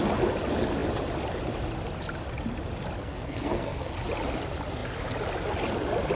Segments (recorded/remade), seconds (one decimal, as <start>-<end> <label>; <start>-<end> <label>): 0.0-3.0 recorded; 3.0-3.9 remade; 3.9-6.2 recorded